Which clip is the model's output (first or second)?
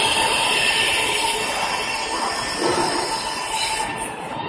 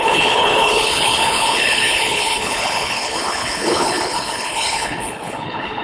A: second